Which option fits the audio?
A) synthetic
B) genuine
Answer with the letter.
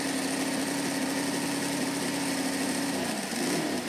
B